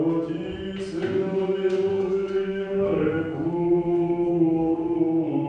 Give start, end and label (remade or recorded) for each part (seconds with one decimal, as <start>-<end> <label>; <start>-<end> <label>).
0.0-1.9 recorded; 1.9-5.0 remade; 5.0-5.5 recorded